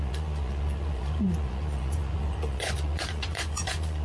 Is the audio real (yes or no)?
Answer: no